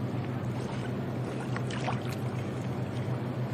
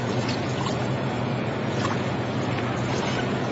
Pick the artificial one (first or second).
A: second